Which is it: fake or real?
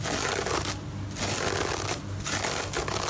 real